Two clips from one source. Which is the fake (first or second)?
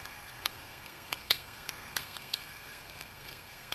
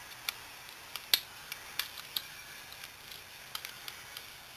first